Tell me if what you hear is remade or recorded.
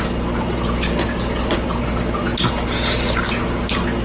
recorded